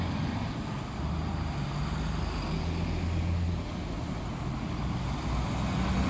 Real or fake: real